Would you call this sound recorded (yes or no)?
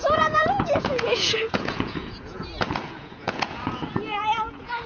no